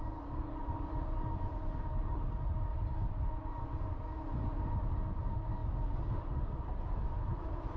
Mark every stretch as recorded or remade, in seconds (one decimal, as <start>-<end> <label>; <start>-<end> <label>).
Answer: 0.0-7.8 recorded

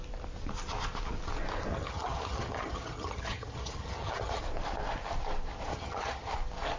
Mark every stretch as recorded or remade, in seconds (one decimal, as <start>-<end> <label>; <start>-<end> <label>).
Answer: 0.0-1.7 recorded; 1.7-4.4 remade; 4.4-5.7 recorded; 5.7-6.3 remade; 6.3-6.8 recorded